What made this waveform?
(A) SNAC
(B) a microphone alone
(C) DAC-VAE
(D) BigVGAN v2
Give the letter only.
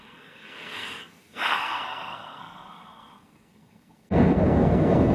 A